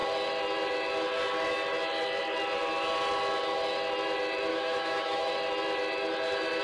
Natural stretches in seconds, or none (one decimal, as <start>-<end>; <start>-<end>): 0.0-4.5; 5.3-6.6